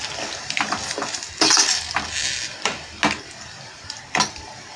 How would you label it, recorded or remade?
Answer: recorded